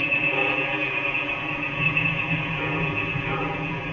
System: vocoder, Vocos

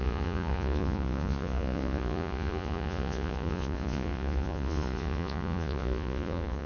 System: vocoder, Vocos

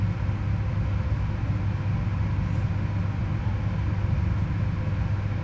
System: none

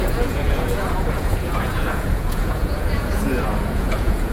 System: vocoder, Vocos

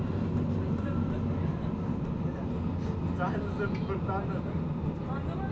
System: none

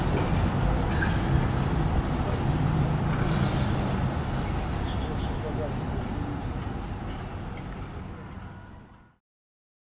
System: none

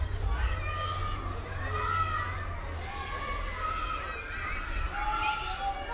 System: none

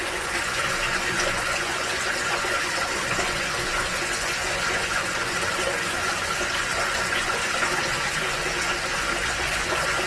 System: vocoder, Vocos